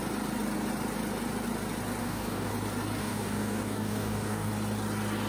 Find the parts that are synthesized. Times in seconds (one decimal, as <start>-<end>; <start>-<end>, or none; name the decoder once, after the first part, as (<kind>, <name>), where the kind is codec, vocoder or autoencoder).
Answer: 2.0-2.5 (codec, DAC); 3.0-4.5

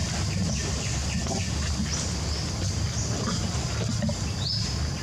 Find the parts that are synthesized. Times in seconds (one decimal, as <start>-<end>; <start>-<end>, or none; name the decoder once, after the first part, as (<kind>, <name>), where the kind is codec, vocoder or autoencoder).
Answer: none

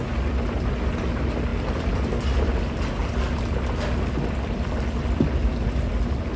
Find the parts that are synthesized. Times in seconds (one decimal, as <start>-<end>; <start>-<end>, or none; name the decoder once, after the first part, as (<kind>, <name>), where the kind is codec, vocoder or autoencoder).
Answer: 1.5-2.6 (vocoder, BigVGAN v2); 3.0-5.9